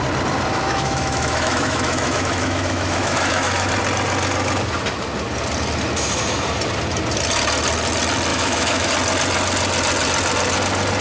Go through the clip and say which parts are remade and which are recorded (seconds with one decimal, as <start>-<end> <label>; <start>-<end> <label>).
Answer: 0.0-0.5 recorded; 0.5-3.7 remade; 3.7-8.3 recorded; 8.3-8.9 remade; 8.9-11.0 recorded